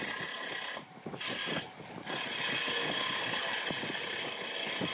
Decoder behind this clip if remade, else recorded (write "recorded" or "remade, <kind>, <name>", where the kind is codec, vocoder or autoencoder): recorded